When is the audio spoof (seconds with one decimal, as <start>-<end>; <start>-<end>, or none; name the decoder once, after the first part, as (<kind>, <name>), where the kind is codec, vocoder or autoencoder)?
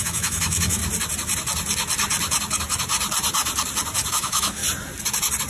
0.0-0.8 (autoencoder, DAC-VAE); 4.1-4.6